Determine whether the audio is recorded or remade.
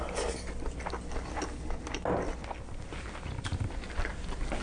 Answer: recorded